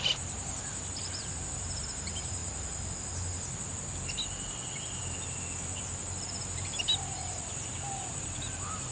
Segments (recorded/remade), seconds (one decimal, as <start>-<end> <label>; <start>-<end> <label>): 0.0-2.4 remade; 2.4-6.2 recorded; 6.2-8.9 remade